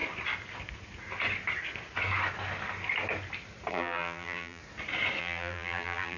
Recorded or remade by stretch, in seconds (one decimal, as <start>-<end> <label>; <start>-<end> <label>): 0.0-3.7 recorded; 3.7-4.6 remade; 4.6-5.2 recorded; 5.2-6.2 remade